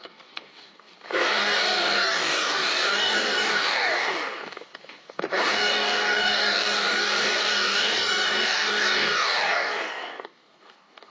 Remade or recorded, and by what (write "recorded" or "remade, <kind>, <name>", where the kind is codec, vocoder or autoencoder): remade, codec, DAC